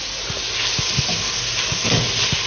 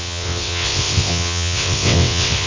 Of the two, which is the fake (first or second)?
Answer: second